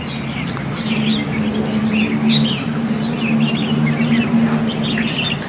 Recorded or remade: recorded